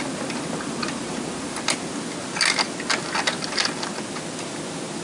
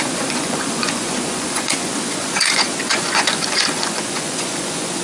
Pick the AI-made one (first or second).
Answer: second